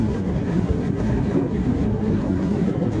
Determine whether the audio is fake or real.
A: fake